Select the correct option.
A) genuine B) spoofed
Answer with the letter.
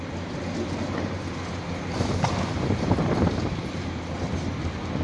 A